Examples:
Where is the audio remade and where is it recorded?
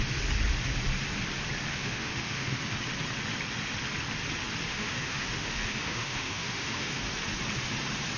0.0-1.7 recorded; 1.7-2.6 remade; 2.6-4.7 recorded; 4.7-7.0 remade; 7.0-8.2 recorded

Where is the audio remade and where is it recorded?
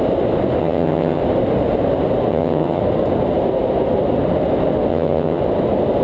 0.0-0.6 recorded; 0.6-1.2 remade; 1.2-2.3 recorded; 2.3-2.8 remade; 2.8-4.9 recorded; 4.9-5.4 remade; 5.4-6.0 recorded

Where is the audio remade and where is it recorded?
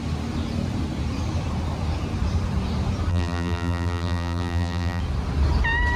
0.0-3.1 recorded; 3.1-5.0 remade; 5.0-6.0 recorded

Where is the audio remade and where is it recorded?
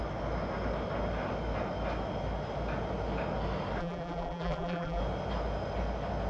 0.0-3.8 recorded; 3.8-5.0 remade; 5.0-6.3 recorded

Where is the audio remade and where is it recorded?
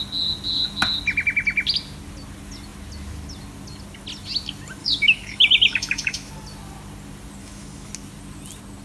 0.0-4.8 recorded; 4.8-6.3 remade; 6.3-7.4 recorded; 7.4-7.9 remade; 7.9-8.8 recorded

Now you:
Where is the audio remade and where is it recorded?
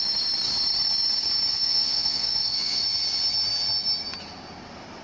0.0-1.5 recorded; 1.5-2.8 remade; 2.8-5.0 recorded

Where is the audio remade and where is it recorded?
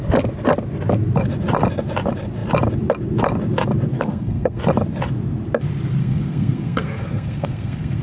0.0-3.9 recorded; 3.9-4.6 remade; 4.6-6.0 recorded; 6.0-8.0 remade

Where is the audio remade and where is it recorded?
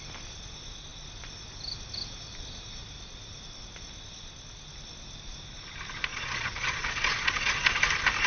0.0-6.1 recorded; 6.1-7.8 remade; 7.8-8.3 recorded